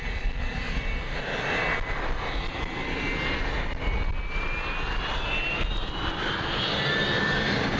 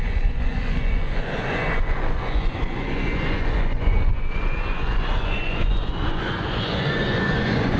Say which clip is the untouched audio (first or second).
first